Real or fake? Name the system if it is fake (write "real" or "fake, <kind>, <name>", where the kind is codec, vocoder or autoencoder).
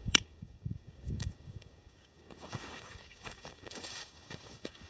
fake, codec, DAC